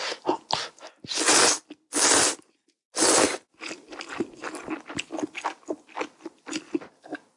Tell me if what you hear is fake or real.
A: real